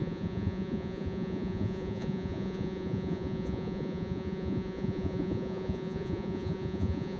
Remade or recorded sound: remade